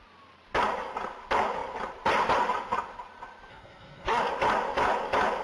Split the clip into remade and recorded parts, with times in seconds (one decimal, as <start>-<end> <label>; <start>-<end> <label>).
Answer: 0.0-3.5 recorded; 3.5-4.2 remade; 4.2-5.4 recorded